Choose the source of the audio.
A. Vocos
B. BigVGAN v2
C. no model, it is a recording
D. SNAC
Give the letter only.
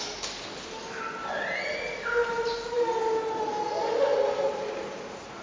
C